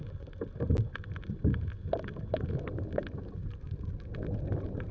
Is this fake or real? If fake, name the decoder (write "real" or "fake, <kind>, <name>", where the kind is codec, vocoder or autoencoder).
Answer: real